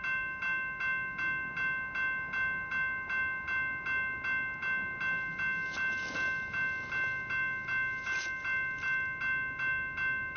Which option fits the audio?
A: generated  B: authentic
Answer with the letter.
B